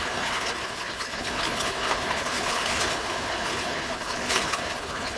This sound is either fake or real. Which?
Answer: fake